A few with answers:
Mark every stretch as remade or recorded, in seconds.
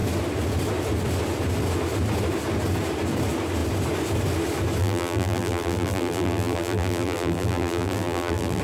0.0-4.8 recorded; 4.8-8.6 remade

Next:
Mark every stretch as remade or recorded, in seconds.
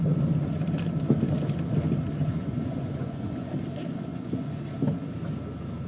0.0-2.2 recorded; 2.2-3.5 remade; 3.5-4.1 recorded; 4.1-4.6 remade; 4.6-5.9 recorded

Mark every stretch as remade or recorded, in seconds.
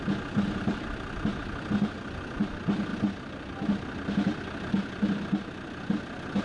0.0-6.4 recorded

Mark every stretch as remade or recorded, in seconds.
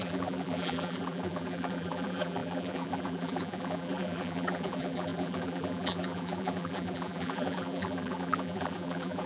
0.0-9.3 remade